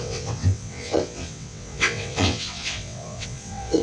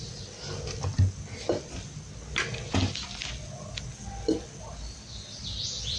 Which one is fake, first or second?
first